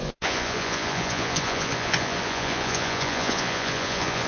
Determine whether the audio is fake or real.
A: fake